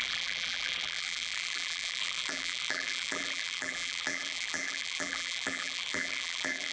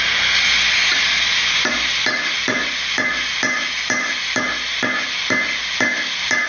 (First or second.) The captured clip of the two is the second